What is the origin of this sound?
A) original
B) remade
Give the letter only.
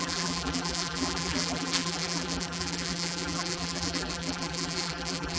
B